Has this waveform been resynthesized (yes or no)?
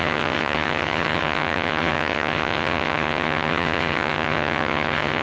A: yes